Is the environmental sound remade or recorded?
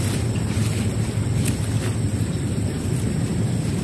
remade